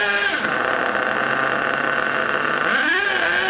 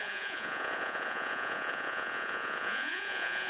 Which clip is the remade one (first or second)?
second